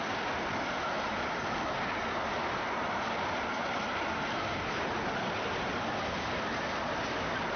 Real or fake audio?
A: real